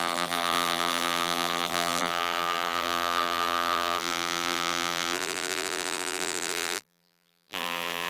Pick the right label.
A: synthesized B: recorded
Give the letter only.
A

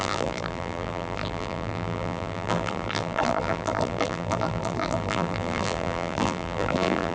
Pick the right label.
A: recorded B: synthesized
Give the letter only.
B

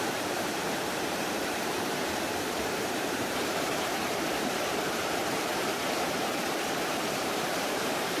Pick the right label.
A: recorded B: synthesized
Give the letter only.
B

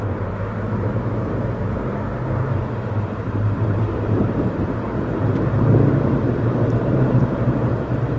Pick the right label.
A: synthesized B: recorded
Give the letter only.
A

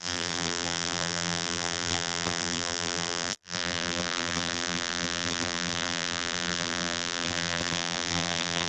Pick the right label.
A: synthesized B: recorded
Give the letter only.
A